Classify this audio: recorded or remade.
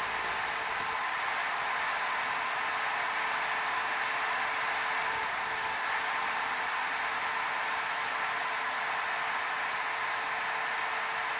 recorded